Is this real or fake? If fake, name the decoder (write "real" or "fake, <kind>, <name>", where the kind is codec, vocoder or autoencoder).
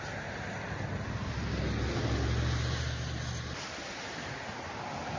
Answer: real